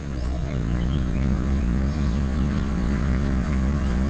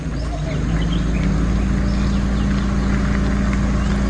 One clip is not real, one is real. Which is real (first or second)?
second